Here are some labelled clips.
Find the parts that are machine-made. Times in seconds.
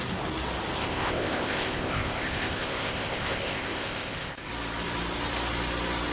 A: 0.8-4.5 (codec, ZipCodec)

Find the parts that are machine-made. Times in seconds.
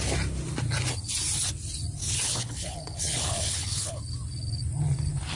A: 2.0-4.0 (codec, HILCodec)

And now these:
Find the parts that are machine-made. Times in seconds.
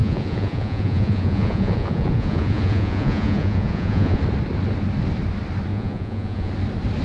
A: 0.0-4.2 (vocoder, Vocos); 5.7-6.5